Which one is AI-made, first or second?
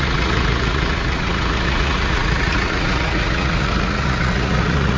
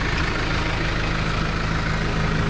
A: first